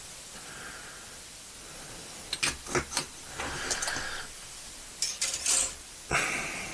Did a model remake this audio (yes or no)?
no